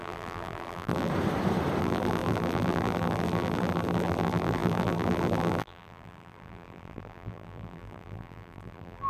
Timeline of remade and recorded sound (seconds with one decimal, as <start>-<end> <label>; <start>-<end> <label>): 0.0-1.1 remade; 1.1-1.8 recorded; 1.8-9.1 remade